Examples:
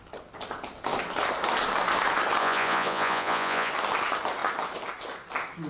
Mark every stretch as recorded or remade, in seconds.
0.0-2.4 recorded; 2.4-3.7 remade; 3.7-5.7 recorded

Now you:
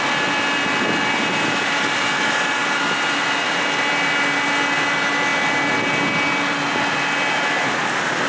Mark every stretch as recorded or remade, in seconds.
0.0-8.3 recorded

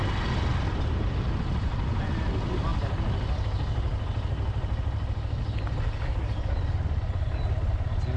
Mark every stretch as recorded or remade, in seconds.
0.0-8.2 recorded

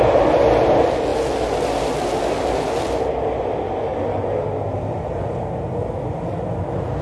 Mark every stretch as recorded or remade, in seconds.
0.0-7.0 recorded